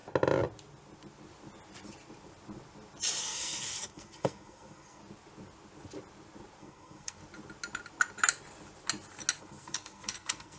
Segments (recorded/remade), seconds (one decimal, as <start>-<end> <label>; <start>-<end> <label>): 0.0-3.2 recorded; 3.2-5.0 remade; 5.0-6.6 recorded; 6.6-7.2 remade; 7.2-9.4 recorded; 9.4-10.6 remade